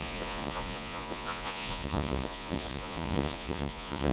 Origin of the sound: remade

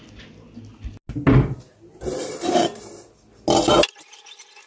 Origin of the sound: recorded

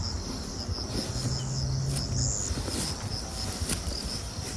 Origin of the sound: recorded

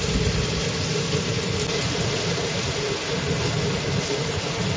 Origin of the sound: recorded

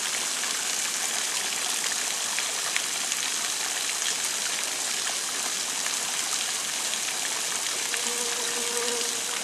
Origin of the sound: recorded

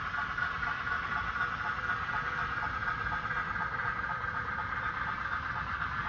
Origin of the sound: recorded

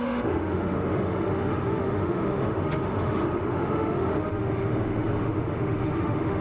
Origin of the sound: remade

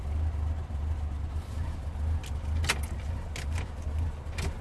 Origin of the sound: recorded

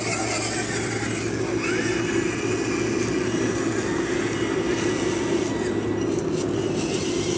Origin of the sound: recorded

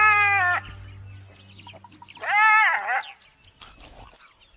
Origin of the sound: recorded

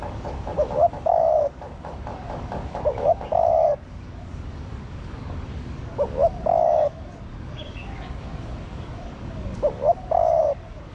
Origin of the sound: remade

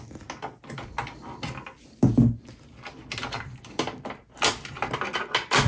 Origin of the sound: recorded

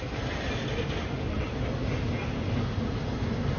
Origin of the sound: recorded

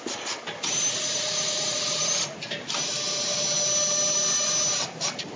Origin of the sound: recorded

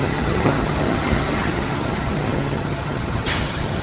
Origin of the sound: remade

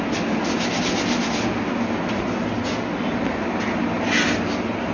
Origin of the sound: recorded